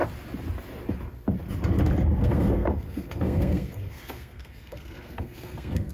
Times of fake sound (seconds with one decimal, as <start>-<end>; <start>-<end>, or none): 2.2-5.9